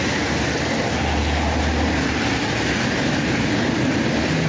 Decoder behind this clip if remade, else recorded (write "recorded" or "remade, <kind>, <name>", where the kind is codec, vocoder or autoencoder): recorded